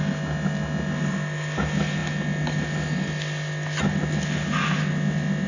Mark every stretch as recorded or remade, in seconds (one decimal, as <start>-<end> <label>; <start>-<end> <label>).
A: 0.0-5.5 recorded